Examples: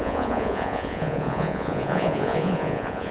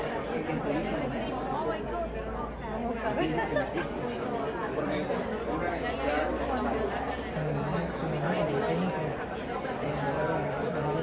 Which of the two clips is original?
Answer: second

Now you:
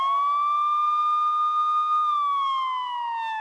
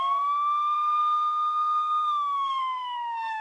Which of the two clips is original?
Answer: first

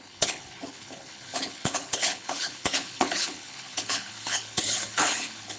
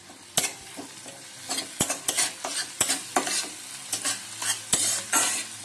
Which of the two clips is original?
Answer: second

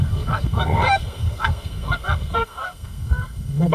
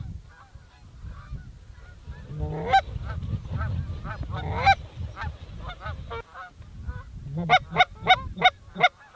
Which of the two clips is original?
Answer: second